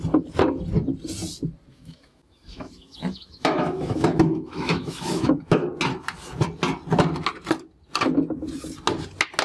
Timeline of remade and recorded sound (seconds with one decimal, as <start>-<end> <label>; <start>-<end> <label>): 0.0-1.7 recorded; 1.7-5.7 remade; 5.7-9.4 recorded